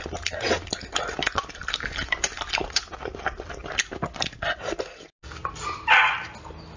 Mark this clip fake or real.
real